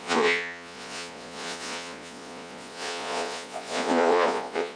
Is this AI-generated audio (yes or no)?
yes